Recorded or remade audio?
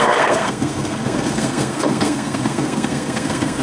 remade